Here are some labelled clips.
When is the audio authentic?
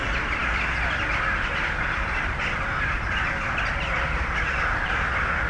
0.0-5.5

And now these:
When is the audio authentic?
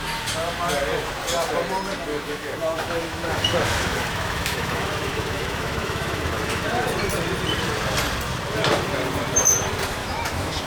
0.0-2.1; 6.9-10.0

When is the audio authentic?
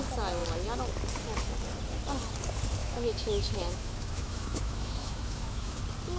0.0-2.8; 5.8-6.2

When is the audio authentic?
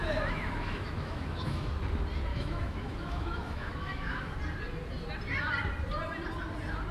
1.7-2.3; 4.4-6.9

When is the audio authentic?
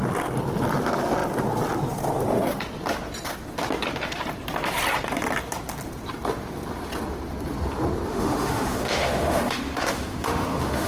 0.0-8.1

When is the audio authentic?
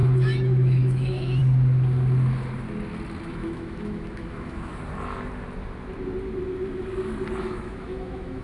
1.4-3.2; 4.7-7.4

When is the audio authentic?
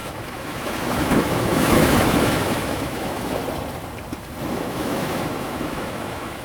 3.4-4.5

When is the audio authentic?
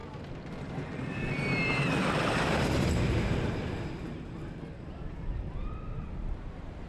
0.0-6.9